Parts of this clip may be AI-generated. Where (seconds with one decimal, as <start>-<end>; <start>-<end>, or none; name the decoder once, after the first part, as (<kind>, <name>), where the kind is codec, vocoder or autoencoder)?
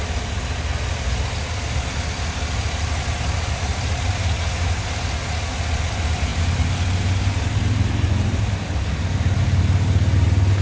none